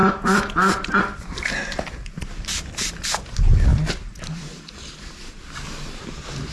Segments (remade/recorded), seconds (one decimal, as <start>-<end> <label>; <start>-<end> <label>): 0.0-6.5 recorded